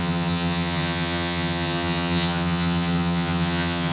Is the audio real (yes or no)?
no